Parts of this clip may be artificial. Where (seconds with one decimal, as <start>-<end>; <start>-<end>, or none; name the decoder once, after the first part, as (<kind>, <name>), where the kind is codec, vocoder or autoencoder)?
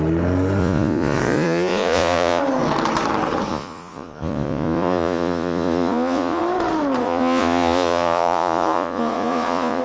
0.6-2.4 (vocoder, Vocos); 3.5-6.4; 7.0-9.8